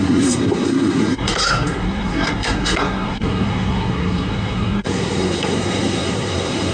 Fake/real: fake